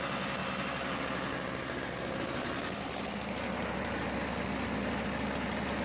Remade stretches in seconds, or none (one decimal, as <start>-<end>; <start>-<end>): none